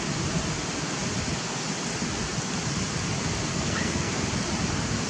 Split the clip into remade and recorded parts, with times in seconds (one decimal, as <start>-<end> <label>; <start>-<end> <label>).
0.0-3.5 recorded; 3.5-4.2 remade; 4.2-5.1 recorded